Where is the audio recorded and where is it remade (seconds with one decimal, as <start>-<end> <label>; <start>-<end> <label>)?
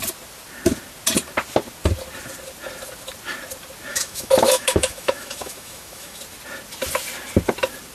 0.0-3.9 recorded; 3.9-6.2 remade; 6.2-7.9 recorded